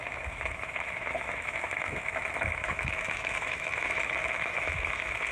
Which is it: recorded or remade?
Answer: remade